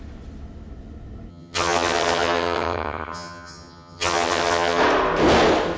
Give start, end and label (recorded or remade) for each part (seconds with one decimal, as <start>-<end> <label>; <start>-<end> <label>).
0.0-1.3 recorded; 1.3-4.8 remade; 4.8-5.8 recorded